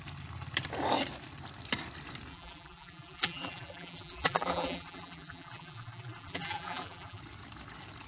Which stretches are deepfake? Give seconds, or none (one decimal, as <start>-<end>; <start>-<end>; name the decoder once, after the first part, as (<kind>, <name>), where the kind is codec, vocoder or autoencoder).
2.3-7.2 (vocoder, BigVGAN v2)